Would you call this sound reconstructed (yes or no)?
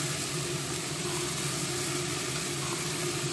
no